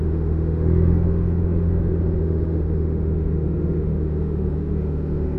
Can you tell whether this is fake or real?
fake